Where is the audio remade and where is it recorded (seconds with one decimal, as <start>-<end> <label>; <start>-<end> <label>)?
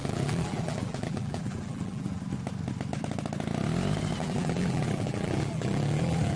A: 0.0-2.2 remade; 2.2-4.2 recorded; 4.2-6.4 remade